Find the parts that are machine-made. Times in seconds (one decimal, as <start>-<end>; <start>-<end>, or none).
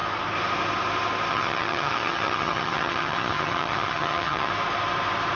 1.3-4.5